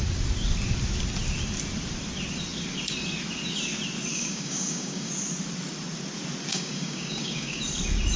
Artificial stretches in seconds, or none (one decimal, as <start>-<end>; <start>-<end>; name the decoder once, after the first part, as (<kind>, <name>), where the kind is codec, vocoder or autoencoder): 4.1-5.1 (codec, DAC); 6.5-7.6